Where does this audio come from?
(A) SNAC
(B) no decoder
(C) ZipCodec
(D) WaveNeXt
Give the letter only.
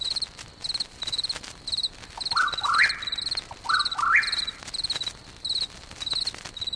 B